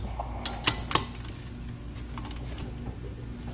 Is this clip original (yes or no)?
yes